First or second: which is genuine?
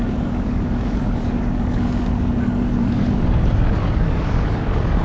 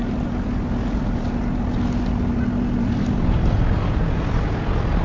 second